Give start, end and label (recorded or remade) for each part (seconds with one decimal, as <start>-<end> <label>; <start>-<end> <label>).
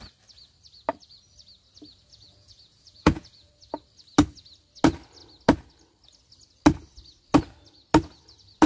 0.0-1.9 recorded; 1.9-3.5 remade; 3.5-8.7 recorded